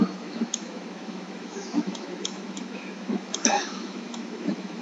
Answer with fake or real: fake